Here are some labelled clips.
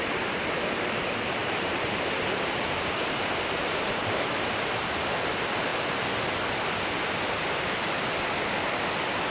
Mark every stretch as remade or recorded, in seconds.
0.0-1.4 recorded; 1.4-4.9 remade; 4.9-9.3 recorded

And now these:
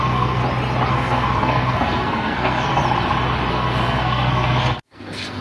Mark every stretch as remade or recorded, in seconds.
0.0-0.4 remade; 0.4-0.9 recorded; 0.9-2.8 remade; 2.8-3.5 recorded; 3.5-5.4 remade

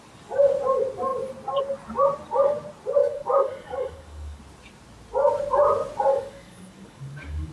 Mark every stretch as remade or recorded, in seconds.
0.0-3.0 recorded; 3.0-4.4 remade; 4.4-6.1 recorded; 6.1-7.5 remade

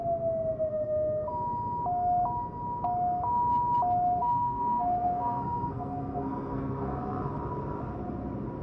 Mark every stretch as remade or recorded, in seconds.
0.0-0.7 recorded; 0.7-1.3 remade; 1.3-4.2 recorded; 4.2-7.0 remade; 7.0-8.6 recorded

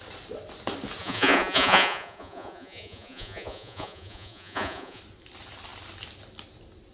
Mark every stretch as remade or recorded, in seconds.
0.0-1.0 recorded; 1.0-5.0 remade; 5.0-6.9 recorded

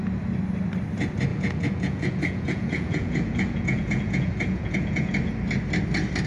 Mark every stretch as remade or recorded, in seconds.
0.0-1.3 recorded; 1.3-5.1 remade; 5.1-6.3 recorded

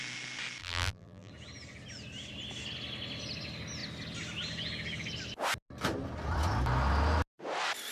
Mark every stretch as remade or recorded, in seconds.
0.0-0.6 recorded; 0.6-1.3 remade; 1.3-7.9 recorded